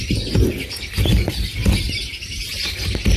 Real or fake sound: real